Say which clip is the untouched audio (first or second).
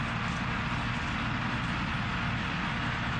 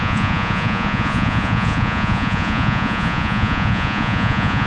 first